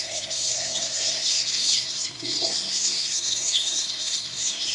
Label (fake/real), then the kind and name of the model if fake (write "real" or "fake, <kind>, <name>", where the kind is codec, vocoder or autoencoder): fake, codec, SNAC